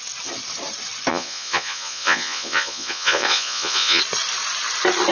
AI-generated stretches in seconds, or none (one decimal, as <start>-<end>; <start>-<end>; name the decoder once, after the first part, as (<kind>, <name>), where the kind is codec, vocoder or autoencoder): 1.1-4.0 (vocoder, Vocos)